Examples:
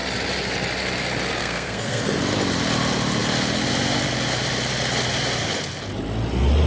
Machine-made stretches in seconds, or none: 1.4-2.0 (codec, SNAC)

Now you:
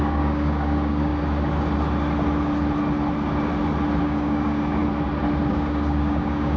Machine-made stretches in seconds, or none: 0.0-1.1 (codec, DAC); 4.0-4.8; 5.5-6.6

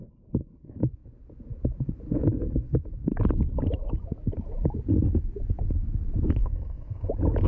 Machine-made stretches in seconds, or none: 6.4-7.1 (codec, SNAC)

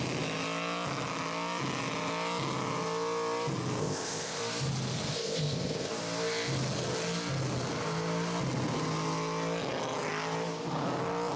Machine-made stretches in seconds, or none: 3.8-4.4 (codec, ZipCodec); 5.1-5.9

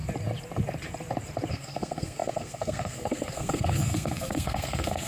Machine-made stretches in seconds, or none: 1.5-5.1 (codec, SNAC)

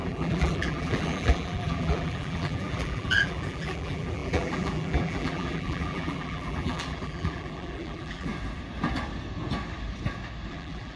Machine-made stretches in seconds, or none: 0.0-8.3 (vocoder, BigVGAN v2); 10.5-11.0